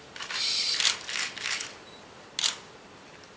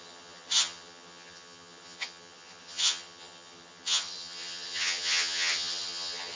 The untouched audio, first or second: first